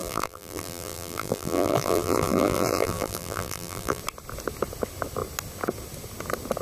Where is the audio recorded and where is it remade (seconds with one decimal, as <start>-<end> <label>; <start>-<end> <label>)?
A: 0.0-4.0 remade; 4.0-6.6 recorded